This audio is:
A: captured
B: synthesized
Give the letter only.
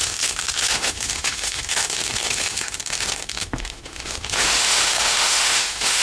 B